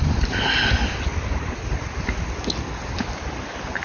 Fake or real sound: real